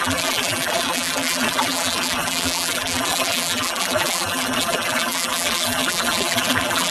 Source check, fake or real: fake